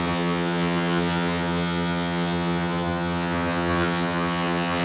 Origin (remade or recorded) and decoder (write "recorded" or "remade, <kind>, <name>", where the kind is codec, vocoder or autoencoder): remade, vocoder, HiFi-GAN